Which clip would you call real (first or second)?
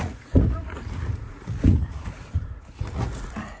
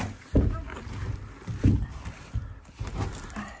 second